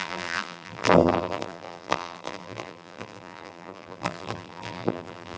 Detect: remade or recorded remade